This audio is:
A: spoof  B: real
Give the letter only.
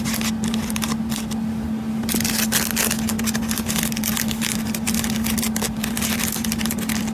B